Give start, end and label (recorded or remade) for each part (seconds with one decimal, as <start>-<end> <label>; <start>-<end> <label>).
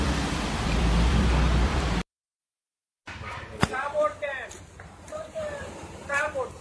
0.0-2.4 remade; 2.4-3.6 recorded; 3.6-6.6 remade